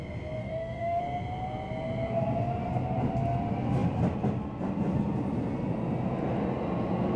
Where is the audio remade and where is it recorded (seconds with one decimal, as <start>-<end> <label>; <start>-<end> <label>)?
0.0-0.4 recorded; 0.4-1.0 remade; 1.0-7.2 recorded